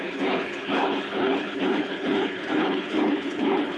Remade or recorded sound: remade